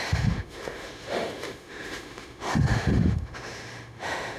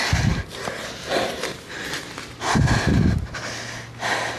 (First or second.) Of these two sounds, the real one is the second